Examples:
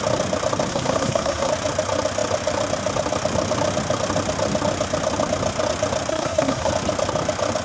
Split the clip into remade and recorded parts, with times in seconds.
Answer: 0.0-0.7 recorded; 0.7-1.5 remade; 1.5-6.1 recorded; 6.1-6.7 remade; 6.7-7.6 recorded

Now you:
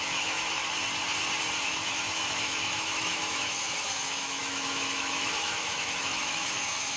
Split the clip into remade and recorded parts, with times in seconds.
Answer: 0.0-0.6 remade; 0.6-1.6 recorded; 1.6-7.0 remade